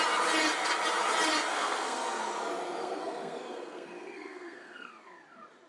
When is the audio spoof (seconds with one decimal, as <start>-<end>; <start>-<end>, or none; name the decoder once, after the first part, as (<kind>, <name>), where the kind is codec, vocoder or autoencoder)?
1.5-2.2 (codec, SNAC); 2.8-4.9